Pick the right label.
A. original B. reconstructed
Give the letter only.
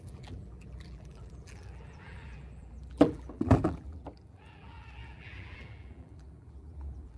B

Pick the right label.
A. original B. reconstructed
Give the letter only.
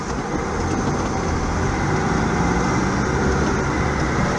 A